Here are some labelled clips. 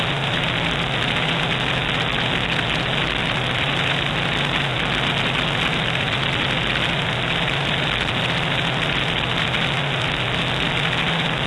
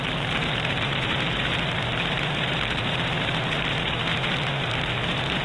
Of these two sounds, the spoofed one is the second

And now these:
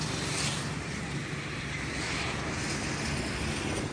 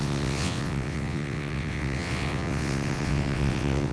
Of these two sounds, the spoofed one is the second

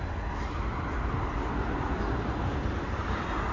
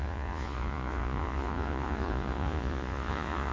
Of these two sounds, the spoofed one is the second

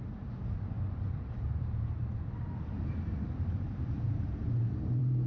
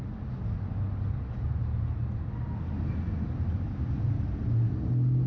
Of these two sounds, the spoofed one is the first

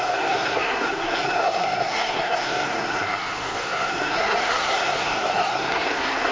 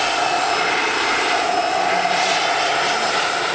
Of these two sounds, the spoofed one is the first